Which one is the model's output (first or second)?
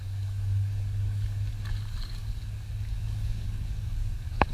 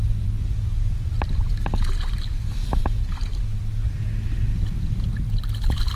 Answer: first